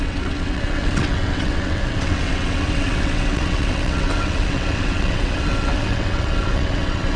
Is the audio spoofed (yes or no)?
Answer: yes